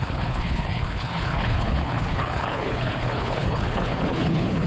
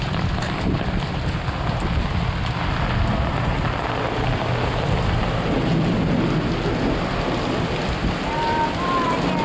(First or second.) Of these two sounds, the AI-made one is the first